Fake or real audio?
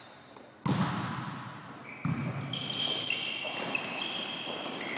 real